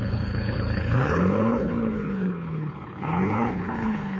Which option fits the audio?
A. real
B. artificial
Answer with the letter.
B